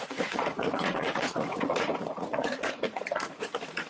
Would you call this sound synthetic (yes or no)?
yes